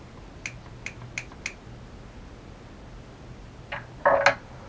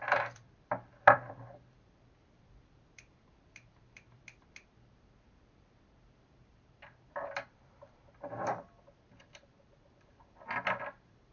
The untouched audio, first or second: first